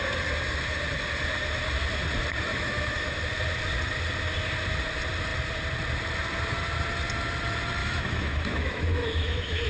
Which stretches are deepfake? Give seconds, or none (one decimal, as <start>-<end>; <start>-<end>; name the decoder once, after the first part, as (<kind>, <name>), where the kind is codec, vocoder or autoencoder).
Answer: 2.5-3.2 (autoencoder, DAC-VAE); 7.8-9.7